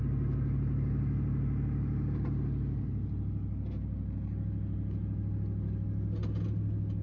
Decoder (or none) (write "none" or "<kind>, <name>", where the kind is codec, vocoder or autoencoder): none